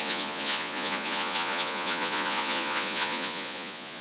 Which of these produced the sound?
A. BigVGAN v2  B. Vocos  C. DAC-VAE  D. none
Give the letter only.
B